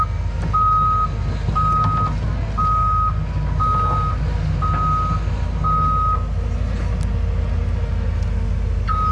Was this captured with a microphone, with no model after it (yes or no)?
yes